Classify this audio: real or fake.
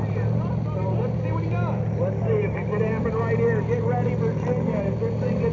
real